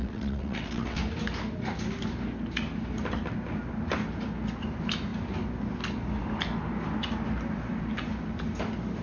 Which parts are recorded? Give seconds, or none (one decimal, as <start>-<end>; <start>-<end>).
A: 1.0-9.0